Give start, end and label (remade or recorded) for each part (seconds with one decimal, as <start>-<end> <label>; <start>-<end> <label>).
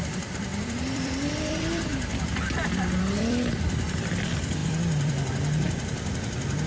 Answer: 0.0-6.7 remade